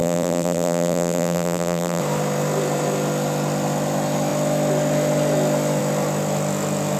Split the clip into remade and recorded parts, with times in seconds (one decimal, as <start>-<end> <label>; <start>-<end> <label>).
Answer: 0.0-2.0 remade; 2.0-7.0 recorded